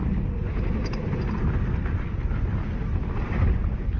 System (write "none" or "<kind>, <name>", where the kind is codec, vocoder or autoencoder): none